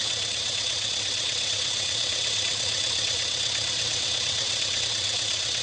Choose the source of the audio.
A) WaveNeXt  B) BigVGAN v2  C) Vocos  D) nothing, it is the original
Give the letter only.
A